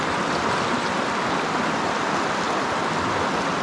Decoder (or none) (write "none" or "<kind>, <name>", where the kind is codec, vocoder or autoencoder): none